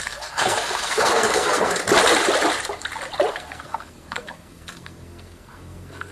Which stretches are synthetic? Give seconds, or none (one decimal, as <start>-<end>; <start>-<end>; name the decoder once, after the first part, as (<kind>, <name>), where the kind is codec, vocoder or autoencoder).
0.0-1.8 (codec, SNAC); 3.3-6.1